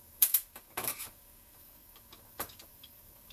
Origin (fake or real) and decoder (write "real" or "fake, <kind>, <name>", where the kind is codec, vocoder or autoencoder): fake, codec, DAC